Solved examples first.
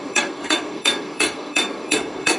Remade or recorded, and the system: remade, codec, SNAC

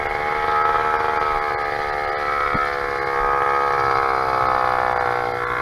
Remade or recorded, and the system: recorded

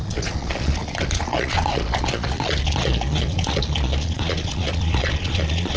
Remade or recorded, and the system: remade, vocoder, Vocos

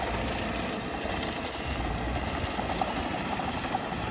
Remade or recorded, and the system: recorded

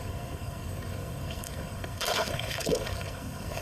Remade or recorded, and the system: remade, codec, SNAC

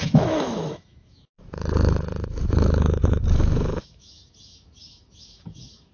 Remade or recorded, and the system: remade, autoencoder, DAC-VAE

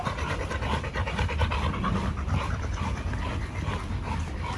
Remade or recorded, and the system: remade, vocoder, BigVGAN v2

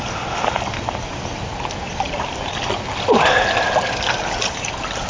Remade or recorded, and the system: recorded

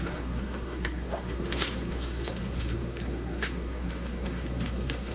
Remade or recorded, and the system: remade, codec, SNAC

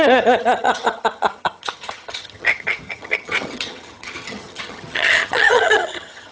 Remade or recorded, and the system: remade, vocoder, HiFi-GAN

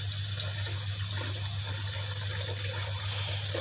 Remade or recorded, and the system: recorded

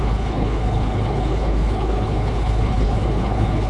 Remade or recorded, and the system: remade, codec, HILCodec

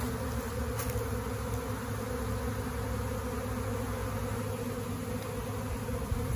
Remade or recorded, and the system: recorded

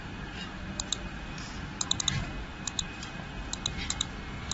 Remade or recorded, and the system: recorded